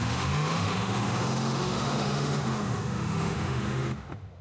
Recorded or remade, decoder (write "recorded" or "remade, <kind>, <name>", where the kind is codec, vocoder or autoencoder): remade, autoencoder, DAC-VAE